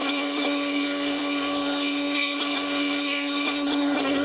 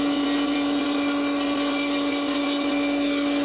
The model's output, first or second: first